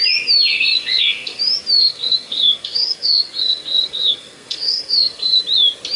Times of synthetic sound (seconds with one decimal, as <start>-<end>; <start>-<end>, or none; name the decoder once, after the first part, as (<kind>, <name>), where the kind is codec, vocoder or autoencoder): 0.5-1.4 (codec, SNAC); 1.8-5.4